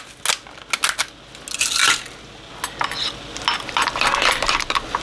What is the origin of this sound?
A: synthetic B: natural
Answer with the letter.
B